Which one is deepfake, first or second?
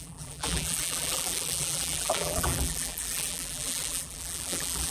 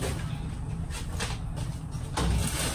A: first